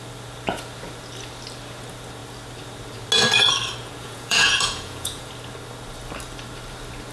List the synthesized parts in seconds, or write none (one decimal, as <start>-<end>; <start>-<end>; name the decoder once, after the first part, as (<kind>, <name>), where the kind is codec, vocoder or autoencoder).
4.0-5.3 (vocoder, Vocos)

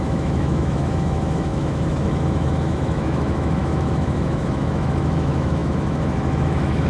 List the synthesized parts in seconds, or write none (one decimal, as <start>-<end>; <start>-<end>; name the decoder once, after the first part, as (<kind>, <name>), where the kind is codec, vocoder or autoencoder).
0.0-6.9 (autoencoder, DAC-VAE)

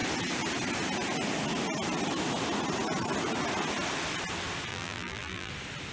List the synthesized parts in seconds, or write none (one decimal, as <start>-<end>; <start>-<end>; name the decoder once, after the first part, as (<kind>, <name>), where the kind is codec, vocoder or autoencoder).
4.7-5.5 (vocoder, BigVGAN v2)

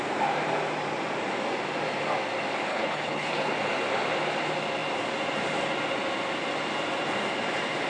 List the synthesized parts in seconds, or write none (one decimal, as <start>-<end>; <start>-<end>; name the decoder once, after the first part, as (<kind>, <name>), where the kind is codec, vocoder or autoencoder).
2.7-3.5 (codec, HILCodec)